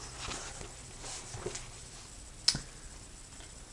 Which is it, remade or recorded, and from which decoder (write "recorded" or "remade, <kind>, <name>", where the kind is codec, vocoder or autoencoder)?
recorded